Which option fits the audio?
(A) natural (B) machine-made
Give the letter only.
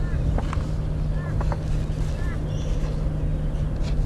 A